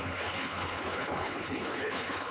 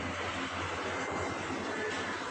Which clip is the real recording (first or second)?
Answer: second